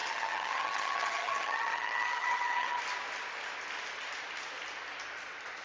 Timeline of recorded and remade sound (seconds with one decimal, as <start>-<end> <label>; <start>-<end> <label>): 0.0-2.8 remade; 2.8-5.6 recorded